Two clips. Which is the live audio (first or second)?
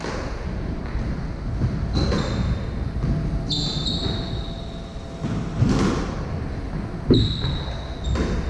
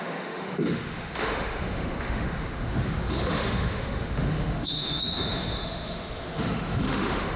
first